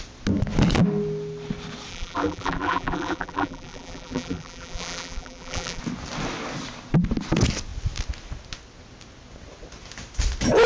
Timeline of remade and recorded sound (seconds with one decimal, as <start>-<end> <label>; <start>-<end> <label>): 0.0-1.9 recorded; 1.9-5.8 remade; 5.8-10.7 recorded